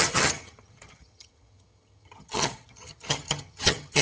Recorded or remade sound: remade